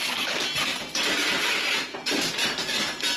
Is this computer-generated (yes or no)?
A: no